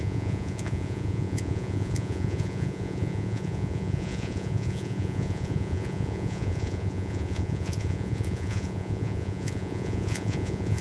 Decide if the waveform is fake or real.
fake